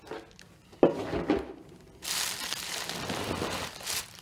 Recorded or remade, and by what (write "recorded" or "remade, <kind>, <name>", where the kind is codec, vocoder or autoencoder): recorded